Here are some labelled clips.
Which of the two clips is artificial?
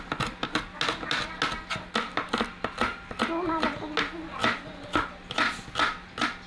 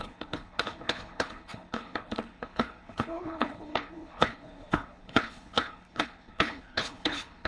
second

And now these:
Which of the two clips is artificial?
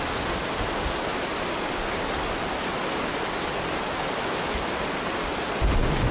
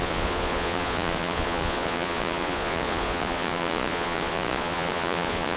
second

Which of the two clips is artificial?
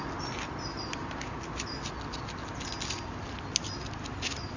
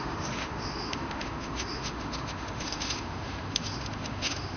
second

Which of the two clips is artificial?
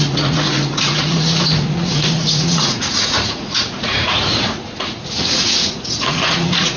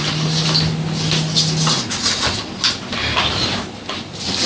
first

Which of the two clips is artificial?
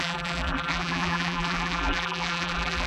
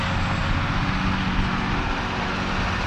first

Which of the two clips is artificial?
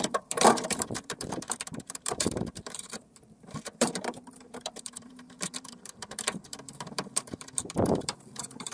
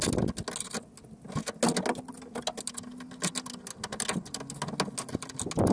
first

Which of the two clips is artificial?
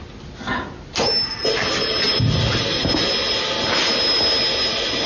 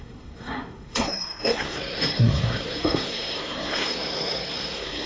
second